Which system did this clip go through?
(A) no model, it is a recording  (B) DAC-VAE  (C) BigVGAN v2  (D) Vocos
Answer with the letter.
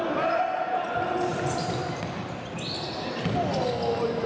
A